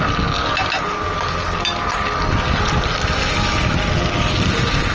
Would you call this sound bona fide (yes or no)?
yes